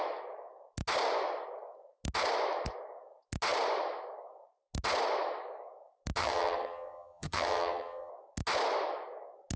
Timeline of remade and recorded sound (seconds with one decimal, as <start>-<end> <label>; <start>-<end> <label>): 0.0-6.2 recorded; 6.2-8.1 remade; 8.1-9.6 recorded